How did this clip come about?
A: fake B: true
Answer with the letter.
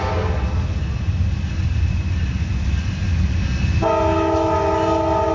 B